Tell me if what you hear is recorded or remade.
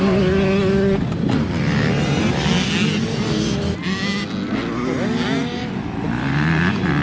recorded